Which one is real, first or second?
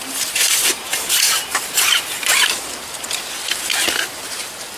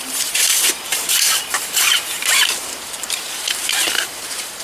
first